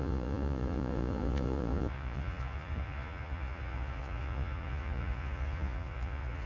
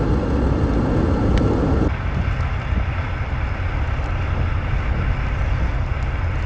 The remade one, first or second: first